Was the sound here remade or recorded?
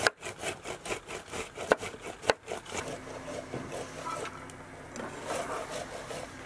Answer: recorded